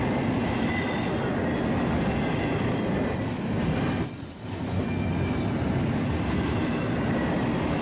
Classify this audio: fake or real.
real